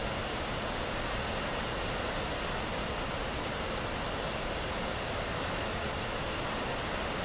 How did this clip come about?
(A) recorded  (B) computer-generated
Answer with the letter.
A